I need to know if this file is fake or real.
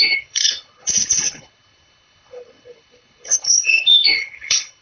fake